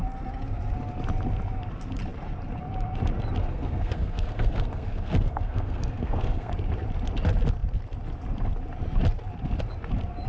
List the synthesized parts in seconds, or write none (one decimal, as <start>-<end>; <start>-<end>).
3.4-6.5